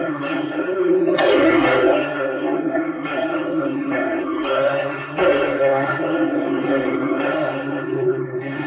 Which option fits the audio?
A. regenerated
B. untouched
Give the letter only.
A